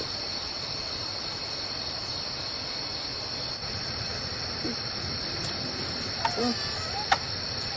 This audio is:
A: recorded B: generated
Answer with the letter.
A